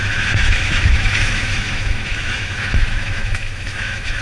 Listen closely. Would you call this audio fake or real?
fake